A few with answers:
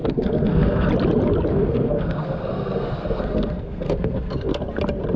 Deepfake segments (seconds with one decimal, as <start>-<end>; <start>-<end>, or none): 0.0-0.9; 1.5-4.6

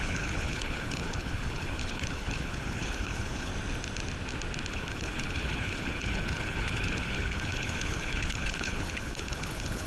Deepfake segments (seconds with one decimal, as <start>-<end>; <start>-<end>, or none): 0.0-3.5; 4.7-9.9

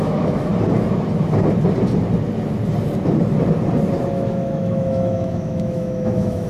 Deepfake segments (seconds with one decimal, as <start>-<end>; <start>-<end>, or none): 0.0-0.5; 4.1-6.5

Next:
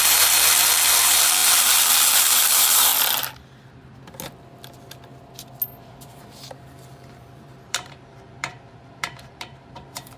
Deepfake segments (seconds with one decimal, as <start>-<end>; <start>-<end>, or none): 0.0-2.9; 5.8-10.2